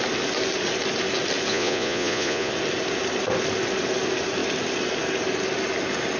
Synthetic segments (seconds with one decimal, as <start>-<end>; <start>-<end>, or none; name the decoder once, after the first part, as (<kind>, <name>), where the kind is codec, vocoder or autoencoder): 1.5-2.5 (vocoder, Vocos)